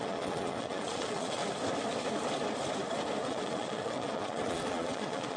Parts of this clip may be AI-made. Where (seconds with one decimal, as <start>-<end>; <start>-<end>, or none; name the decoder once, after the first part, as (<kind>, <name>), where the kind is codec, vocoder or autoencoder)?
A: 0.0-1.4 (vocoder, Vocos); 3.2-5.4